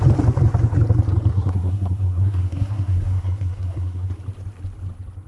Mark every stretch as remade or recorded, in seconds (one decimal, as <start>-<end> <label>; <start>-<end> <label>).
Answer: 0.0-1.3 recorded; 1.3-4.1 remade; 4.1-5.3 recorded